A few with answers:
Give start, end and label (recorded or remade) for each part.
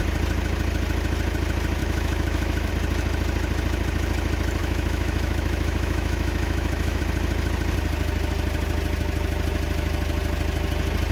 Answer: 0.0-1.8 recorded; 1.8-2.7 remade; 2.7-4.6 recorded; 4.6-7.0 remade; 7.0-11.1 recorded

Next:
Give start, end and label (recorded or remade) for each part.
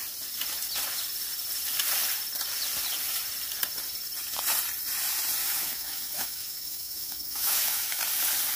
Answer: 0.0-5.4 recorded; 5.4-8.0 remade; 8.0-8.6 recorded